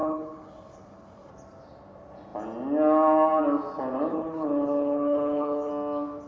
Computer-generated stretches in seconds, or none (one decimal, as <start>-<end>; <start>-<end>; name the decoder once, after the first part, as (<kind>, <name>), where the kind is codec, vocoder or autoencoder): 0.0-1.3 (codec, HILCodec); 4.1-5.7